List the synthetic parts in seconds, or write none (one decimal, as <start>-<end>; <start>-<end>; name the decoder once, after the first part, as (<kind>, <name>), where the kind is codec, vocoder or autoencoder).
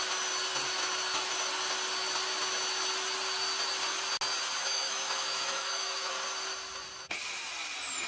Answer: 4.6-6.1 (autoencoder, DAC-VAE)